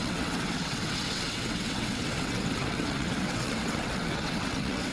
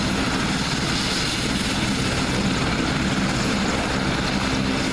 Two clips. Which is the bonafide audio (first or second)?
second